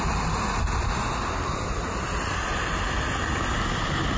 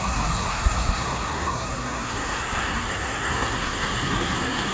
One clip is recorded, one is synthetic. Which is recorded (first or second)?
first